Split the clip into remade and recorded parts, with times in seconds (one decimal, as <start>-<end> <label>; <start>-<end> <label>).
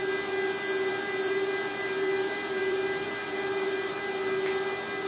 0.0-0.9 recorded; 0.9-4.0 remade; 4.0-5.1 recorded